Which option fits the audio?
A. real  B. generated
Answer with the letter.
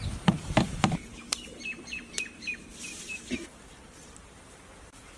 B